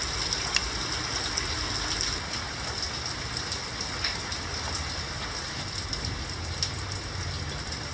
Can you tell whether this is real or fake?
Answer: real